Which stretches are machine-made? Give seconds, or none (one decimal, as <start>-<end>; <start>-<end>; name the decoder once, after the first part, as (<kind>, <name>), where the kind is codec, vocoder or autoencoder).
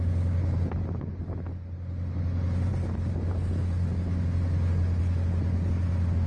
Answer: none